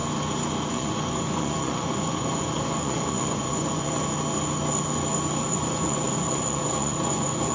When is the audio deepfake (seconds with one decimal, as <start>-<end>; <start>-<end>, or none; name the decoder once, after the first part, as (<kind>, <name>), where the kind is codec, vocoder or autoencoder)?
0.7-4.0 (vocoder, Vocos); 5.5-7.5